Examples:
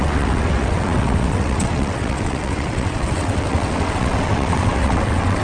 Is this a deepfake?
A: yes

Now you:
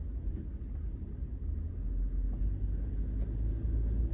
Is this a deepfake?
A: no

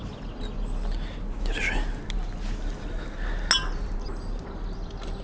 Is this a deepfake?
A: no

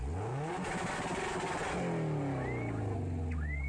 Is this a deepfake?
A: no